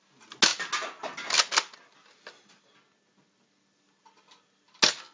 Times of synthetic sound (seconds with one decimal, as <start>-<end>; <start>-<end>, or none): none